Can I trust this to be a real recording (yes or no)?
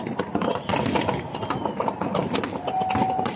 yes